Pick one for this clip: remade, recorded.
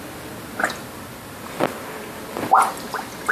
recorded